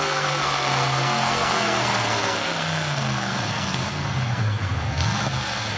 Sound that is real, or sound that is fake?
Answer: fake